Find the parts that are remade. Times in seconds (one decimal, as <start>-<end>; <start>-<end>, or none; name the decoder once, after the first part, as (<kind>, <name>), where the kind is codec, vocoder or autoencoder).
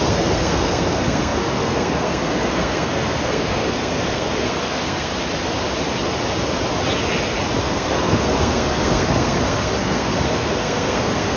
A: 0.0-5.1 (codec, SNAC); 7.6-11.4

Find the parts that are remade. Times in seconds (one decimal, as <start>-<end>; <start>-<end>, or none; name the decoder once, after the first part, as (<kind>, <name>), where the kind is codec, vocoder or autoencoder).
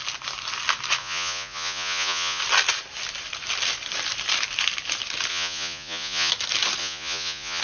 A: 1.0-2.4 (vocoder, Vocos); 5.3-6.3; 6.8-7.6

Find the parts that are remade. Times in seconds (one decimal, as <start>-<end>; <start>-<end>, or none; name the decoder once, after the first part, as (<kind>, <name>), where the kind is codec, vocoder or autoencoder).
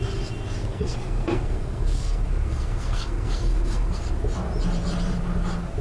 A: 0.6-4.1 (codec, SNAC)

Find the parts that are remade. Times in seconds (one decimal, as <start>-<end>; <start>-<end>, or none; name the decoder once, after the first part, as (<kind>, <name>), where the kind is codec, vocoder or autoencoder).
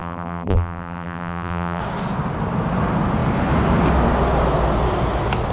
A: 0.0-1.8 (vocoder, BigVGAN v2)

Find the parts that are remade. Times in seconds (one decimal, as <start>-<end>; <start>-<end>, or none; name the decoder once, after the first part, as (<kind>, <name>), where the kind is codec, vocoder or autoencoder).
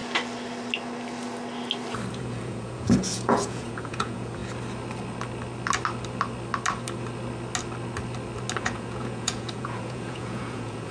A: 2.1-4.4 (vocoder, Vocos); 8.6-10.9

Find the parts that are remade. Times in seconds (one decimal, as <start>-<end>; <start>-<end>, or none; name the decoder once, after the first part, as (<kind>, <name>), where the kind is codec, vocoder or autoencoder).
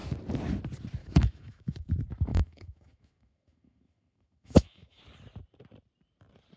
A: 1.0-1.9 (autoencoder, DAC-VAE); 2.3-5.0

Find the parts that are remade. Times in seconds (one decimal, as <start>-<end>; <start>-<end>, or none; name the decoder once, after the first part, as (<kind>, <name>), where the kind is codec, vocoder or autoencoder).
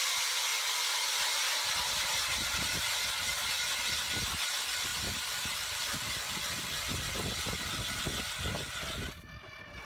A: none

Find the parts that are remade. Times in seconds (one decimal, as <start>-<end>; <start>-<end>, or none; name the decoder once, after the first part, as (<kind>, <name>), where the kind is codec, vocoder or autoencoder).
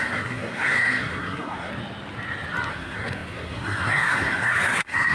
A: 0.0-1.7 (codec, SNAC); 2.7-5.1